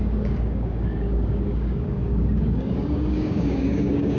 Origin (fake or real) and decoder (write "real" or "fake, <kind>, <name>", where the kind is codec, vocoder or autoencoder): fake, codec, DAC